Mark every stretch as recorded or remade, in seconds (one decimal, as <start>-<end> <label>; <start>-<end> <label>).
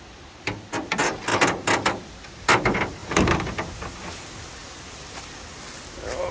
0.0-3.0 recorded; 3.0-3.7 remade; 3.7-6.3 recorded